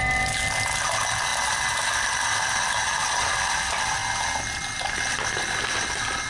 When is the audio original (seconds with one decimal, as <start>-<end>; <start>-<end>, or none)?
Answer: 0.0-6.3